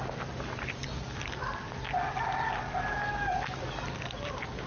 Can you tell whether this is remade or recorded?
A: recorded